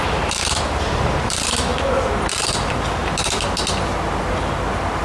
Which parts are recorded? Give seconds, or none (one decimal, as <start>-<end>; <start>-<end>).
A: 3.0-5.0